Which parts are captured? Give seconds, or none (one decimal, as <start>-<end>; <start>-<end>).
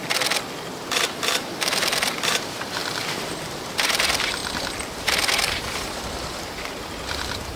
0.0-0.7; 4.4-5.0